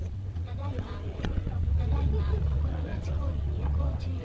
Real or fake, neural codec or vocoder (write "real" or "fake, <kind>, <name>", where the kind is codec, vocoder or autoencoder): fake, vocoder, WaveNeXt